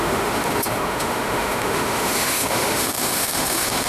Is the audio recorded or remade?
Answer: remade